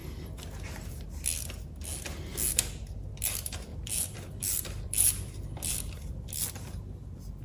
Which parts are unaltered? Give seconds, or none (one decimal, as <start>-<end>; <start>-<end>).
0.0-3.7; 6.5-7.4